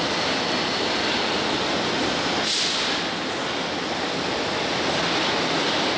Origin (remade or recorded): recorded